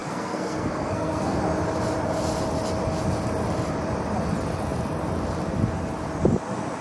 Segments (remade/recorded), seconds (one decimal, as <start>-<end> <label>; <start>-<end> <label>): 0.0-1.4 remade; 1.4-6.8 recorded